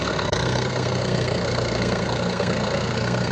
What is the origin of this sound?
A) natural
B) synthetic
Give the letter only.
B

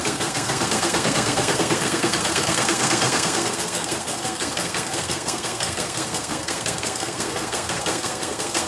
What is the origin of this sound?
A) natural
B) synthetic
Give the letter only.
B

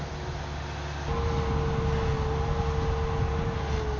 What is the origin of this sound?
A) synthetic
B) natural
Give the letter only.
B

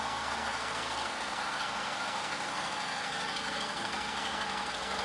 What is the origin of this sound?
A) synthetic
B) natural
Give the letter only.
A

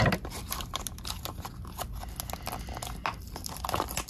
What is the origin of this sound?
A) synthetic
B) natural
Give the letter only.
B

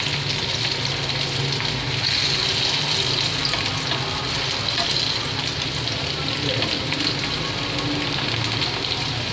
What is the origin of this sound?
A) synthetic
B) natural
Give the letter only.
B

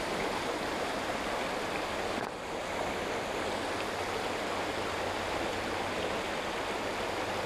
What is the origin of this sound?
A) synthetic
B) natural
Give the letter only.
B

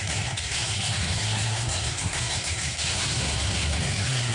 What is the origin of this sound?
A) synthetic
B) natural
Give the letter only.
A